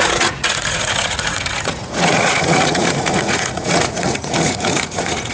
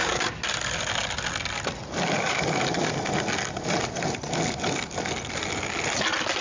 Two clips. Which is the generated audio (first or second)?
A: first